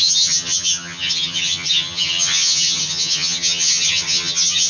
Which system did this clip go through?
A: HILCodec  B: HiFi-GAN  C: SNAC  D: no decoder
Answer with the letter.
B